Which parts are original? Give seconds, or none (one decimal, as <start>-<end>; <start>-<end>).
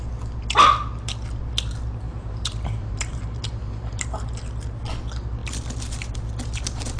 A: 0.0-2.1; 4.3-7.0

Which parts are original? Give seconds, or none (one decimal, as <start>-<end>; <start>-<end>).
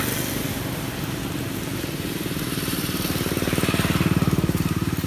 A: 0.0-1.7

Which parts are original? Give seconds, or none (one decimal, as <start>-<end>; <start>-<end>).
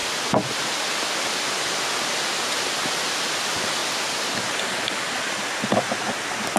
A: 0.0-3.8; 5.4-6.6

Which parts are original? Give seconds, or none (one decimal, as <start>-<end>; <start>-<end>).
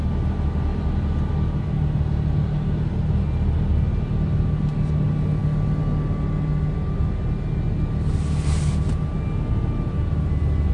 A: 0.0-10.7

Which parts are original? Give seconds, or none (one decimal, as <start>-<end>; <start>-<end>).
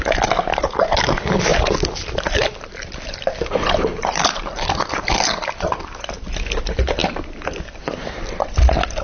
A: 0.0-1.5; 5.1-7.0; 7.8-9.0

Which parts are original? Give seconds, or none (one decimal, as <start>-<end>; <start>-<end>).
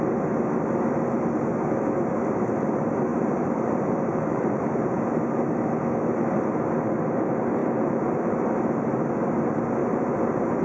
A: 0.0-3.1; 5.0-7.6; 8.4-9.8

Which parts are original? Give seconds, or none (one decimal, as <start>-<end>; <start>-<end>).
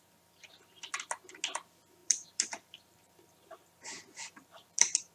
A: 0.0-2.0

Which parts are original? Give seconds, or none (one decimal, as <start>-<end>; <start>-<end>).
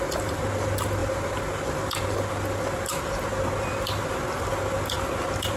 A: 0.0-5.6